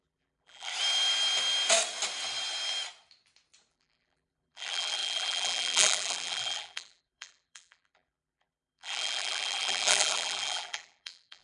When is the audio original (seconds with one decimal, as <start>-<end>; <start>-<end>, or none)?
0.7-3.7